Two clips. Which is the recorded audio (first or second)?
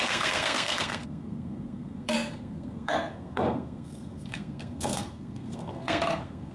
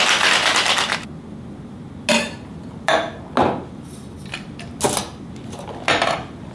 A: second